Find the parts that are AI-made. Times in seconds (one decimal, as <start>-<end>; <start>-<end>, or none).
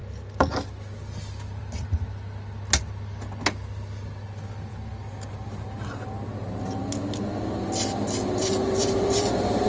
8.4-9.7